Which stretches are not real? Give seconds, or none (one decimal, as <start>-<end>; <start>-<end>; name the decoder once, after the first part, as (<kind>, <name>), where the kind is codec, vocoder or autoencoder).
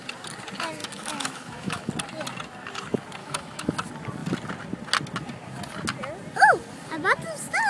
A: 0.8-1.9 (autoencoder, DAC-VAE); 3.2-3.7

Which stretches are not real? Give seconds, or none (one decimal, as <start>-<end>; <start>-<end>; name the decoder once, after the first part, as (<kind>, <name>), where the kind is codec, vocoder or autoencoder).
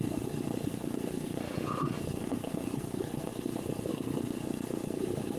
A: 0.0-1.4 (codec, SNAC); 2.0-5.4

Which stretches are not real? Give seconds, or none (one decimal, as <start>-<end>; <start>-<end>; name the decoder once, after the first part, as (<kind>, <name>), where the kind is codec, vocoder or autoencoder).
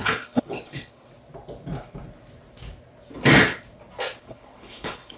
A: 0.0-1.1 (codec, HILCodec); 4.2-5.2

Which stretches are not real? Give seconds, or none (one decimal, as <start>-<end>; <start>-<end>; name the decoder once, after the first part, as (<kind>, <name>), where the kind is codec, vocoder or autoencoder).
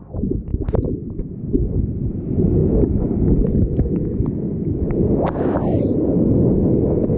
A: 0.0-7.2 (vocoder, BigVGAN v2)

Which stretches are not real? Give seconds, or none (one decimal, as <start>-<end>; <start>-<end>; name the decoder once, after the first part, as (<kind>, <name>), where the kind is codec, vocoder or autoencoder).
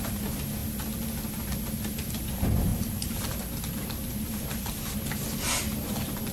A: 2.7-5.0 (vocoder, BigVGAN v2)